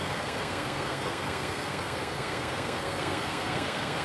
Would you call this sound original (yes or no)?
no